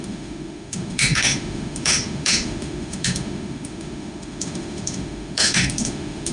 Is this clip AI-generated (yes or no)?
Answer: yes